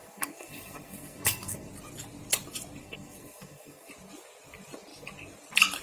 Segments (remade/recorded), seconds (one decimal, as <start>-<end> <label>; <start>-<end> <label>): 0.0-1.7 remade; 1.7-2.8 recorded; 2.8-3.9 remade; 3.9-5.8 recorded